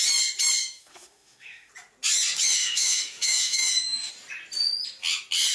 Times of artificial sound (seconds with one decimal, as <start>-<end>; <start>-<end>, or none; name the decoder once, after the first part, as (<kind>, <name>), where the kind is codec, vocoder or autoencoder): 0.6-1.7 (autoencoder, DAC-VAE); 2.6-4.1